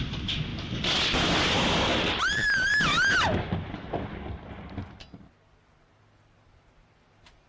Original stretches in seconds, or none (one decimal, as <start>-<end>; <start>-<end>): 0.5-2.2; 2.7-6.0